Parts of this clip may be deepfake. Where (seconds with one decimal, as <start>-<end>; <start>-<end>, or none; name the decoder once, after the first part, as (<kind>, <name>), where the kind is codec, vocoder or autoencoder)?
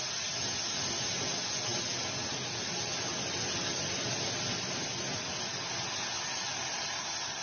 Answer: none